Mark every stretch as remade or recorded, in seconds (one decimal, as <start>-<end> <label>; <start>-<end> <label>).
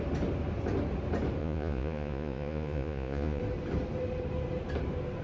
0.0-1.4 recorded; 1.4-3.4 remade; 3.4-5.2 recorded